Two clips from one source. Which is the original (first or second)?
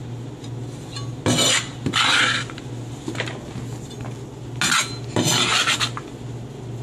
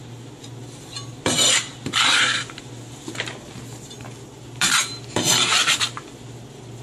first